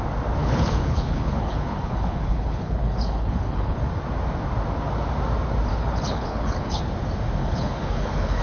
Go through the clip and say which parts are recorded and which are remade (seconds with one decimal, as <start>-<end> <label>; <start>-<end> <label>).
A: 0.0-0.4 recorded; 0.4-3.8 remade; 3.8-5.7 recorded; 5.7-6.8 remade; 6.8-7.4 recorded; 7.4-8.4 remade